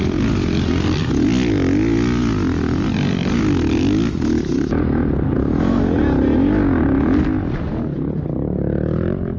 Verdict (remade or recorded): recorded